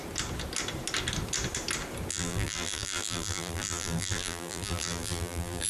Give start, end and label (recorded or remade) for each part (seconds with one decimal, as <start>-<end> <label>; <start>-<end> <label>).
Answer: 0.0-2.1 recorded; 2.1-5.7 remade